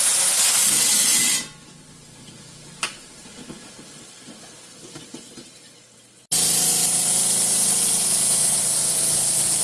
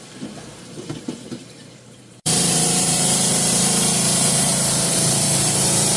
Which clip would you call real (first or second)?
first